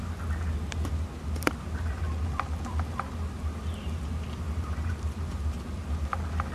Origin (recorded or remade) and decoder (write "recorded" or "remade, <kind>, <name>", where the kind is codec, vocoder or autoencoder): recorded